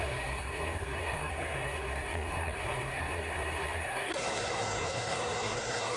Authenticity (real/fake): fake